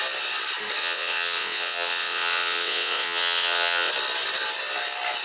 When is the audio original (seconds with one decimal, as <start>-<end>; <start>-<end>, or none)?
0.0-0.8; 3.9-5.2